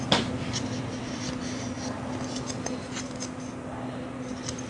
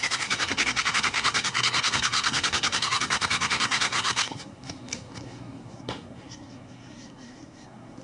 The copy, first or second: second